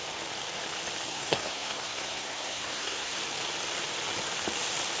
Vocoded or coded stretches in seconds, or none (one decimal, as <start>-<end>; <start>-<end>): 1.1-3.2